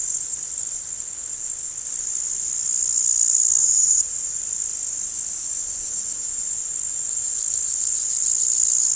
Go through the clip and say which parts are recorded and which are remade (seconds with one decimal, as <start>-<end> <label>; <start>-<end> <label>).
0.0-3.6 recorded; 3.6-4.4 remade; 4.4-5.6 recorded; 5.6-6.2 remade; 6.2-9.0 recorded